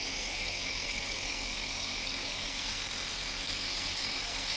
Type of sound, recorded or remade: remade